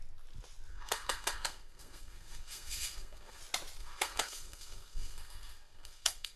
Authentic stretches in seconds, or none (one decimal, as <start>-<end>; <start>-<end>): 0.0-0.7; 3.4-3.8